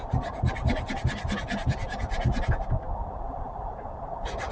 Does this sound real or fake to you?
real